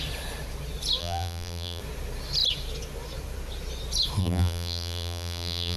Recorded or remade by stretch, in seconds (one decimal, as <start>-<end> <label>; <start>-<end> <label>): 0.0-1.0 recorded; 1.0-1.8 remade; 1.8-4.2 recorded; 4.2-5.8 remade

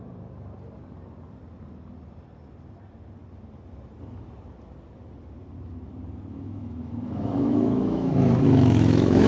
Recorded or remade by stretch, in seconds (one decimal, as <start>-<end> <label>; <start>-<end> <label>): 0.0-6.3 recorded; 6.3-9.3 remade

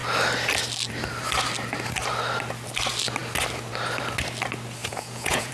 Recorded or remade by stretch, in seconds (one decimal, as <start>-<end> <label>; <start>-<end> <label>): 0.0-4.8 recorded; 4.8-5.5 remade

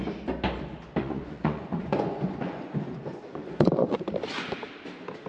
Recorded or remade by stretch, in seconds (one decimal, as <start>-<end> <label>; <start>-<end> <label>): 0.0-1.0 recorded; 1.0-4.1 remade; 4.1-5.3 recorded